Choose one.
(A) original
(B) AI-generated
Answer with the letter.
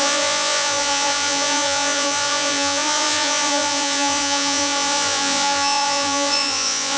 B